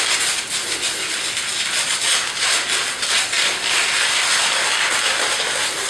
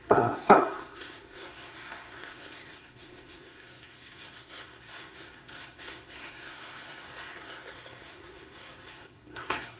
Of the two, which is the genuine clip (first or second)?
first